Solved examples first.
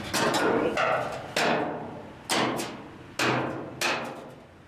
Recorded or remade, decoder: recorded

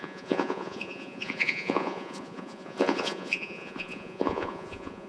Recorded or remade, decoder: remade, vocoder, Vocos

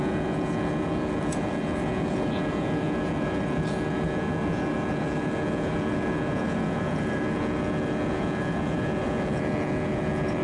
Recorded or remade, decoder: remade, vocoder, Vocos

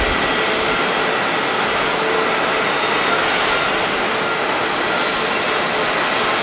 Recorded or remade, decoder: recorded